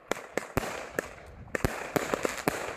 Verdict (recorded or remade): recorded